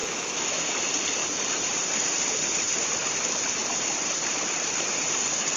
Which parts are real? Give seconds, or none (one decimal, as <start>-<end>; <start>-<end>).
0.6-5.6